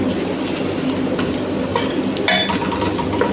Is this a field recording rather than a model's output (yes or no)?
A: yes